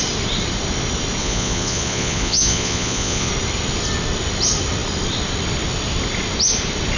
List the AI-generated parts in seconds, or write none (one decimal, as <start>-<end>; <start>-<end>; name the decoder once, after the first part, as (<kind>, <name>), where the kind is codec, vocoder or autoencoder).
1.2-3.3 (vocoder, Vocos)